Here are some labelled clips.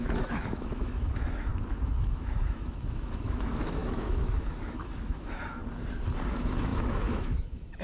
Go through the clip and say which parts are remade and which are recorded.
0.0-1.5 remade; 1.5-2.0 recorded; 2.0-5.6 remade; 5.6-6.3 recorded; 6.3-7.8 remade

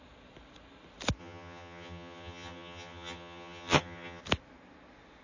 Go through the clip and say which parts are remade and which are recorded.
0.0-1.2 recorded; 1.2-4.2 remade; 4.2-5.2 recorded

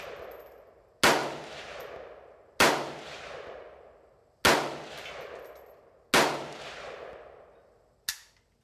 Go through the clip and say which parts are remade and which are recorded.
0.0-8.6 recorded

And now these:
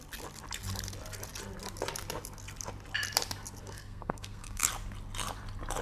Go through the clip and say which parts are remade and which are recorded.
0.0-3.6 recorded; 3.6-4.7 remade; 4.7-5.8 recorded

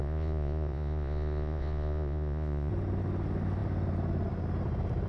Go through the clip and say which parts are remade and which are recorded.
0.0-2.7 remade; 2.7-5.1 recorded